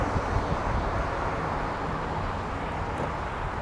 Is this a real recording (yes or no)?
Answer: yes